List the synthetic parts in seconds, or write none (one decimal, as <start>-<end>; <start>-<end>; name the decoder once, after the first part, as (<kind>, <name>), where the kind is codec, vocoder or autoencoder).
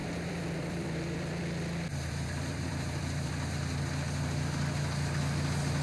0.0-1.4 (vocoder, BigVGAN v2); 1.9-3.3